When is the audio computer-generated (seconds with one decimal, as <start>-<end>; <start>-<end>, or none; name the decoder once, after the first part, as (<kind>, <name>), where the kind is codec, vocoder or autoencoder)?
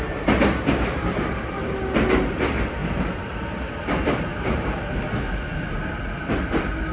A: 2.8-3.7 (vocoder, BigVGAN v2); 4.3-5.1